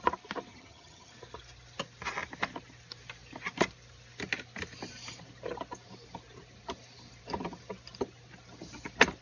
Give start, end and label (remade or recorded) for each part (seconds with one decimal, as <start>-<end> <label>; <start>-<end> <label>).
0.0-0.5 recorded; 0.5-1.1 remade; 1.1-9.2 recorded